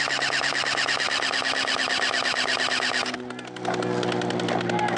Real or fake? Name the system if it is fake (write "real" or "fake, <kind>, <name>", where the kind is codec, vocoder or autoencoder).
real